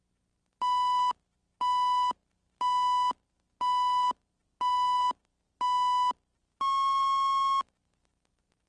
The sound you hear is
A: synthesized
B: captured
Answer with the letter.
B